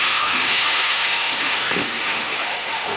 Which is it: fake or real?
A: fake